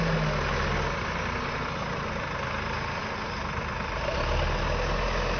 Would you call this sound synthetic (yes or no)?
no